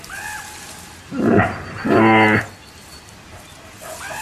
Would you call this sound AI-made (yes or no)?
no